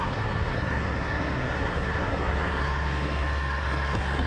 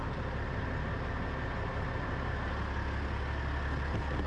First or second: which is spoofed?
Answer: first